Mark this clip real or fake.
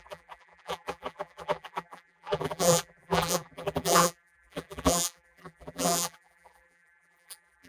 fake